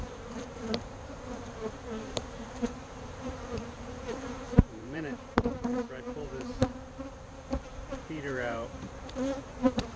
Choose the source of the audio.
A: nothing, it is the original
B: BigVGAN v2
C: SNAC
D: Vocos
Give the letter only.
B